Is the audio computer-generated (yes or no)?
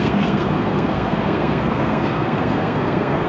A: yes